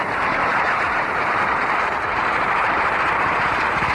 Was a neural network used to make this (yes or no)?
yes